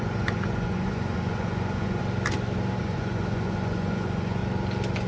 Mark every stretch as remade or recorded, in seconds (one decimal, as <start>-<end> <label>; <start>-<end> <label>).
0.0-2.0 remade; 2.0-2.8 recorded; 2.8-4.4 remade; 4.4-5.1 recorded